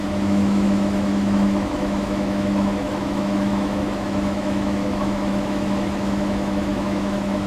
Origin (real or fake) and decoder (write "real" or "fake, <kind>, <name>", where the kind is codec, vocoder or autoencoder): fake, autoencoder, DAC-VAE